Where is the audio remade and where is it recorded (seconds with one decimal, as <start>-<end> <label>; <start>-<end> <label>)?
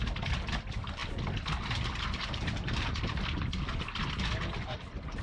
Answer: 0.0-5.2 recorded